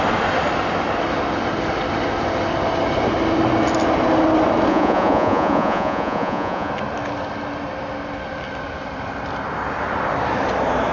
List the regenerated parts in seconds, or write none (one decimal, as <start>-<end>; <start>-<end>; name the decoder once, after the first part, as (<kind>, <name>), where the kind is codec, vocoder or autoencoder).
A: 4.7-6.7 (vocoder, Vocos)